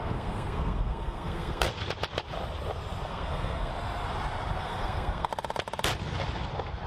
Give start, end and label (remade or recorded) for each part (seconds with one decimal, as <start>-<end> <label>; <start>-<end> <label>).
0.0-1.7 remade; 1.7-3.1 recorded; 3.1-3.7 remade; 3.7-4.6 recorded; 4.6-5.3 remade; 5.3-6.9 recorded